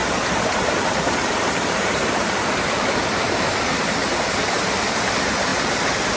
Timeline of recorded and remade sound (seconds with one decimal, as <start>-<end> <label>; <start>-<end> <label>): 0.0-3.7 remade; 3.7-6.2 recorded